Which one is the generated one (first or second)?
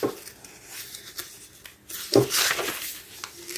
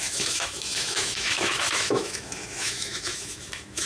second